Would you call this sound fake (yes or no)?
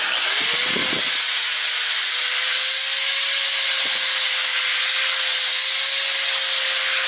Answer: no